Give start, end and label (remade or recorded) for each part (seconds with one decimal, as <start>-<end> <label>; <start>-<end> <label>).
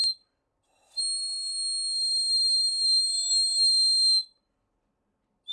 0.0-5.5 recorded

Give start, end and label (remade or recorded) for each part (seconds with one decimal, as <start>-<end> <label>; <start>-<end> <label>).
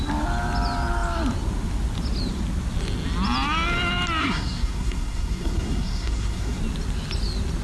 0.0-4.2 recorded; 4.2-6.6 remade; 6.6-7.6 recorded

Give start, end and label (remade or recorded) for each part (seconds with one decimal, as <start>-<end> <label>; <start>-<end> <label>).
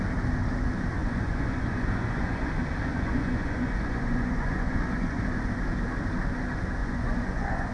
0.0-1.0 recorded; 1.0-2.5 remade; 2.5-2.9 recorded; 2.9-5.2 remade; 5.2-6.8 recorded; 6.8-7.7 remade